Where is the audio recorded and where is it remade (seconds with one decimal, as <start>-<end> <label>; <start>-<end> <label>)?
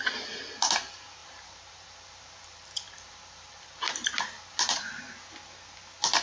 0.0-1.2 recorded; 1.2-4.9 remade; 4.9-6.2 recorded